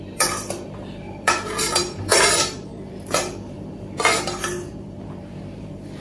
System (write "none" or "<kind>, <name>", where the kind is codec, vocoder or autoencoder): vocoder, BigVGAN v2